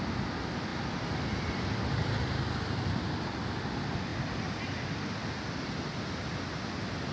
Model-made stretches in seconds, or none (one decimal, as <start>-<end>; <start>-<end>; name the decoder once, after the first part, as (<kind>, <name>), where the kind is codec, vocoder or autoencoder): none